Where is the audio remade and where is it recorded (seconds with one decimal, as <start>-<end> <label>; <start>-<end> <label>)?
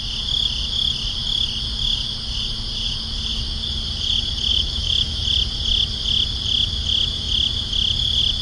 0.0-4.5 recorded; 4.5-5.2 remade; 5.2-8.4 recorded